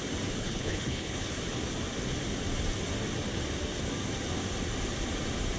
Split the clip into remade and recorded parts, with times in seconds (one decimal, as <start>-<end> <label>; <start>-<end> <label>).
0.0-0.4 recorded; 0.4-1.3 remade; 1.3-5.6 recorded